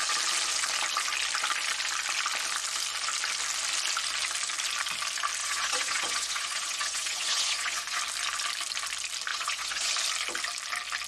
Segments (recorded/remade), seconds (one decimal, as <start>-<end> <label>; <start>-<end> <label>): 0.0-5.4 recorded; 5.4-8.0 remade; 8.0-9.3 recorded; 9.3-9.9 remade; 9.9-11.1 recorded